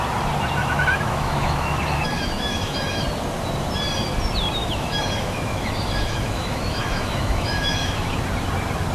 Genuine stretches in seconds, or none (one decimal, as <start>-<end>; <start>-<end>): 0.0-0.6; 3.0-4.6; 8.2-8.9